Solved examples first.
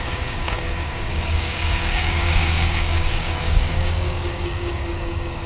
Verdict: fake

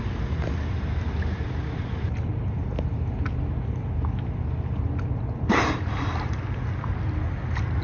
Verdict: real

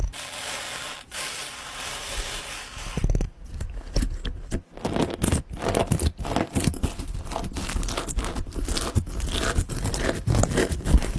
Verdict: real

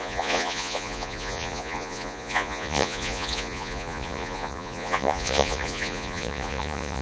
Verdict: fake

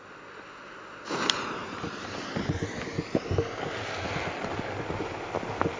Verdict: real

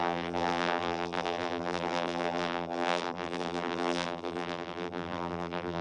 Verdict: fake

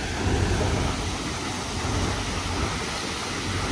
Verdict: real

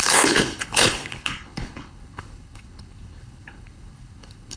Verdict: fake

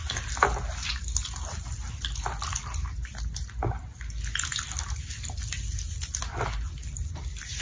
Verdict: real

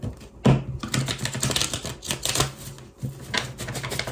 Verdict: real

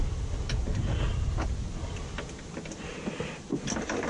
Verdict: real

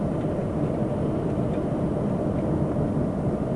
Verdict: real